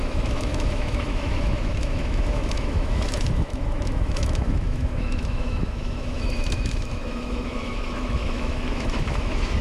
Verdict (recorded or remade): remade